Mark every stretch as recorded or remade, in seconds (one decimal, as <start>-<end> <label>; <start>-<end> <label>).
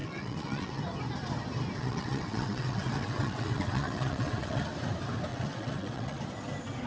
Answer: 0.0-0.8 remade; 0.8-1.8 recorded; 1.8-4.6 remade; 4.6-5.3 recorded; 5.3-6.2 remade; 6.2-6.9 recorded